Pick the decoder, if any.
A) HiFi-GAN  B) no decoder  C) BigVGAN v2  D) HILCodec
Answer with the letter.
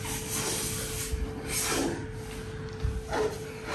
B